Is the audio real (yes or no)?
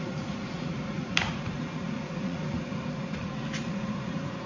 no